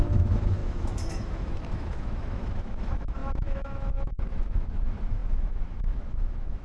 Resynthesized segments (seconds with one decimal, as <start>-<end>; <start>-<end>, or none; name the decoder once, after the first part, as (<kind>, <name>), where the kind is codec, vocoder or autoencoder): 0.0-6.6 (autoencoder, DAC-VAE)